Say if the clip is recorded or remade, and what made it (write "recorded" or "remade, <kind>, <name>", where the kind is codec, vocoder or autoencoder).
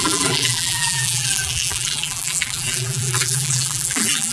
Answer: remade, vocoder, BigVGAN v2